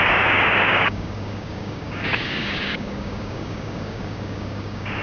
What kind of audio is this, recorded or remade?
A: remade